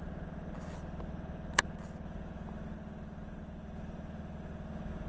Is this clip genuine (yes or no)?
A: yes